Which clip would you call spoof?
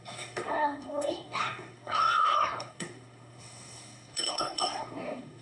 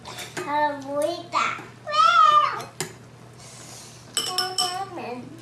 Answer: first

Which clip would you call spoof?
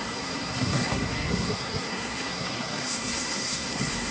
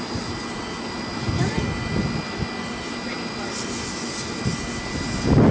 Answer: first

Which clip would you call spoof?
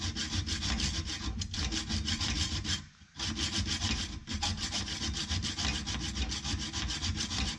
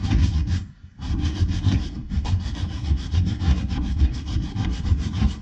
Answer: second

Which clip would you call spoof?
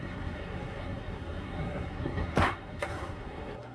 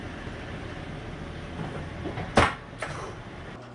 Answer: first